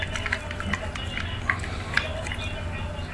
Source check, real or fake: real